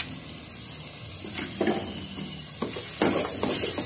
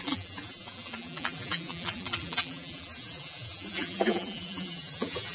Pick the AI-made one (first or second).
second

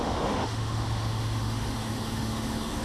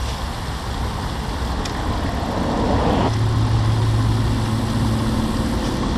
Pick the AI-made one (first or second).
first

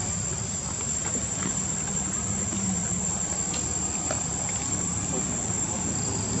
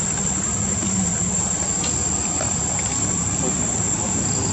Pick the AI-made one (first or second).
first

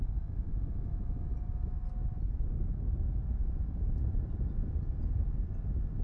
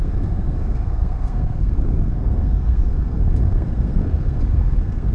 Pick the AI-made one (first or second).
second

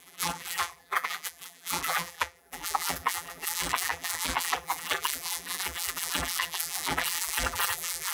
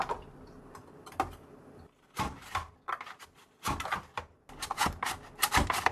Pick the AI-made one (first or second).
first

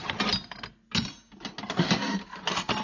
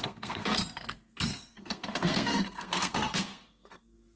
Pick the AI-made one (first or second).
second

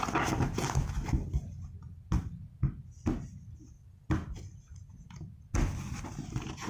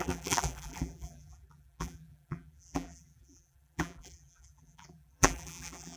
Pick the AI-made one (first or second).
second